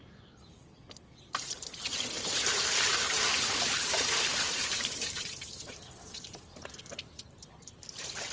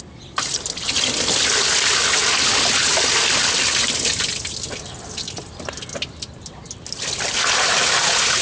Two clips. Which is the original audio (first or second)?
second